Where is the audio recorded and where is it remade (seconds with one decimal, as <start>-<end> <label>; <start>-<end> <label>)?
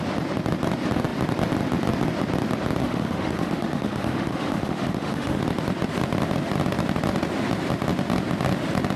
0.0-2.8 recorded; 2.8-5.4 remade; 5.4-9.0 recorded